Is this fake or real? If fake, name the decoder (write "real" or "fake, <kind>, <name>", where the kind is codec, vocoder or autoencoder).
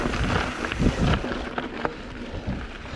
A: real